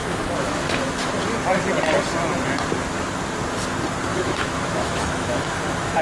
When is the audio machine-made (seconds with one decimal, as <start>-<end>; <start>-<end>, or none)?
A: 0.0-1.2; 4.1-6.0